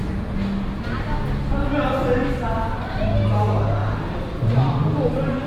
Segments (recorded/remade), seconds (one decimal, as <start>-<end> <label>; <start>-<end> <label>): 0.0-5.5 recorded